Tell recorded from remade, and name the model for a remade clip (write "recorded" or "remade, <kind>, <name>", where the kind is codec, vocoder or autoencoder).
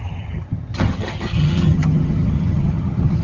remade, vocoder, HiFi-GAN